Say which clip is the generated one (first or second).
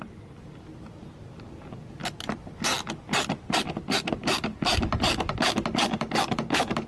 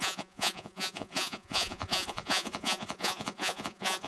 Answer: second